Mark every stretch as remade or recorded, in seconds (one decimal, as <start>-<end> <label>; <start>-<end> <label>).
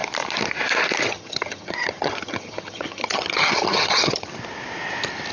0.0-1.1 recorded; 1.1-4.3 remade; 4.3-5.3 recorded